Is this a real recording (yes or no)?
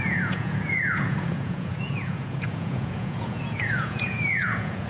no